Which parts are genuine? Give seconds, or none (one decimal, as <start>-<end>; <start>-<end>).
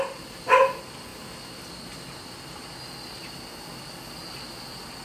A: 0.0-5.0